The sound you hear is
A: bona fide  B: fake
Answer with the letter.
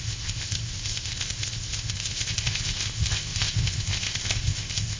B